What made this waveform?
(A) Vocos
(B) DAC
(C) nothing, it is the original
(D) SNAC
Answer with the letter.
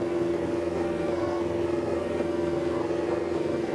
D